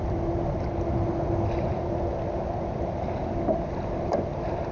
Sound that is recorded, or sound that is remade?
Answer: recorded